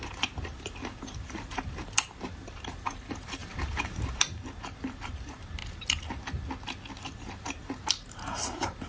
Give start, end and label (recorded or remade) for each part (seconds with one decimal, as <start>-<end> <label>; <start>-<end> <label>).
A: 0.0-5.6 remade; 5.6-6.9 recorded; 6.9-8.9 remade